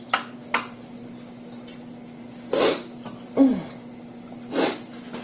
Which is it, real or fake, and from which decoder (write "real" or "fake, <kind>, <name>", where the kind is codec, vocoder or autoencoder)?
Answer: real